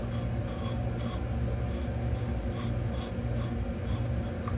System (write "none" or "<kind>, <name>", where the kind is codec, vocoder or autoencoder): none